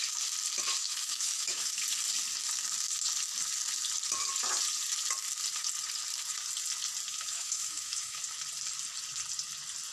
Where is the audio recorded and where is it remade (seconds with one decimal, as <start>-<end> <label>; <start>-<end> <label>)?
0.0-0.8 recorded; 0.8-1.7 remade; 1.7-7.1 recorded; 7.1-8.2 remade; 8.2-9.9 recorded